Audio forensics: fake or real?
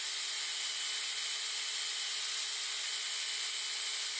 real